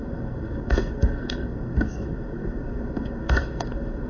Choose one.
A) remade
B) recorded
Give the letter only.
A